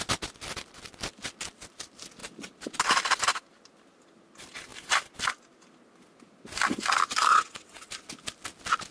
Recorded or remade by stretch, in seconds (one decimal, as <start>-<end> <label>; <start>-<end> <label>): 0.0-7.3 recorded; 7.3-7.9 remade; 7.9-8.9 recorded